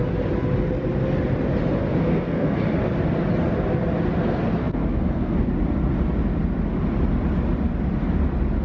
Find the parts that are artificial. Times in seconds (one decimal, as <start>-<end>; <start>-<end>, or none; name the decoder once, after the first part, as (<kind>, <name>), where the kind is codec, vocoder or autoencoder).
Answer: 2.0-2.6 (codec, SNAC); 4.6-5.5